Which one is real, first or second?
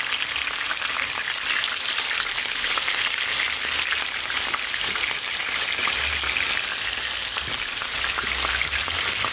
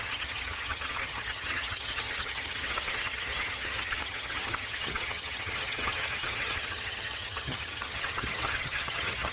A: first